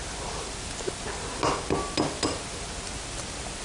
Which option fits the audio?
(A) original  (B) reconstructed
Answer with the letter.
A